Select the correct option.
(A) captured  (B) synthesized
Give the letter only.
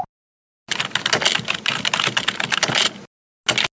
A